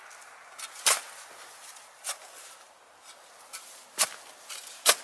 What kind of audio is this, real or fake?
real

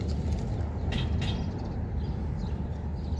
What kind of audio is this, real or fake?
real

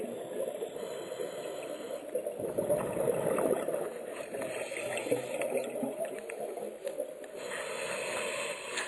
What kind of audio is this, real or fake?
real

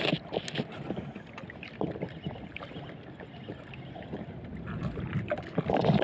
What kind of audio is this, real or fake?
real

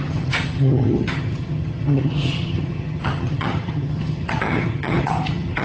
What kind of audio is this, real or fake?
fake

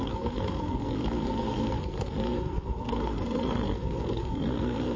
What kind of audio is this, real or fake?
fake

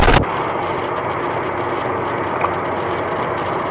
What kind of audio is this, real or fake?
real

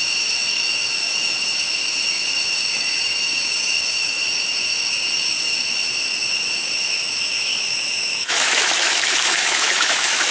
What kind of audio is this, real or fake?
fake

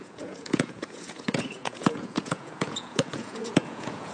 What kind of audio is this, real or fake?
fake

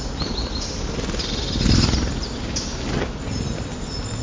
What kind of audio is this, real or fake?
real